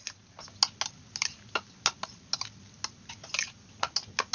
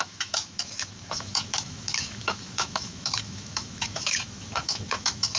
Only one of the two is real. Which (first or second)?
first